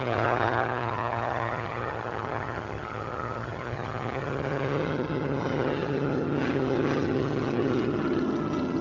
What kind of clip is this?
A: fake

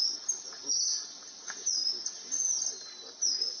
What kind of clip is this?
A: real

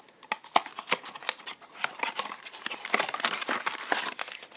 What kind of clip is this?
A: real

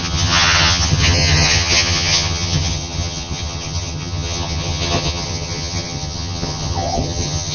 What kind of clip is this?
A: fake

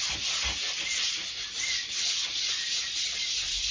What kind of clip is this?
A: real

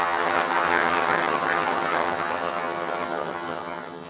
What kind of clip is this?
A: fake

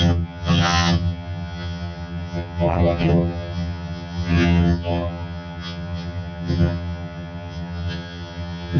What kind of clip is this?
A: fake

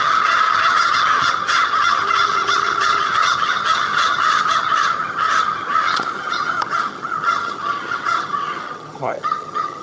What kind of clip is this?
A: fake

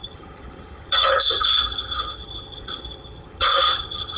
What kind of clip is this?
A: fake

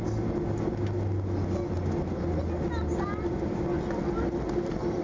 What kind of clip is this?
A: real